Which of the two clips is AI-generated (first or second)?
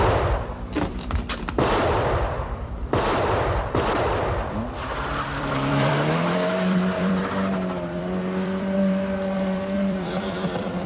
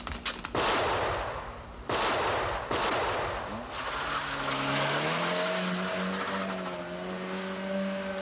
first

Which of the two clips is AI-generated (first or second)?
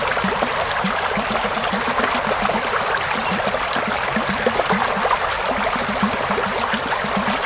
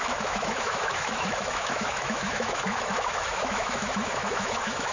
second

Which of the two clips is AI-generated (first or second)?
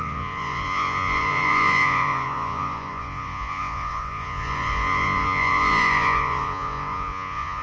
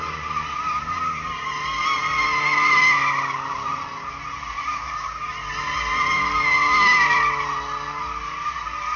first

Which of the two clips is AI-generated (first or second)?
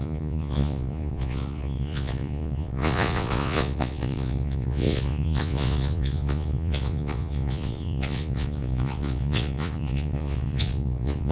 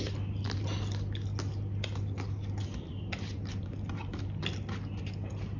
first